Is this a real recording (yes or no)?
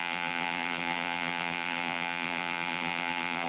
no